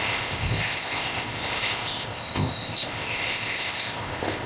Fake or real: fake